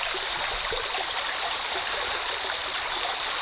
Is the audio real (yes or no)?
yes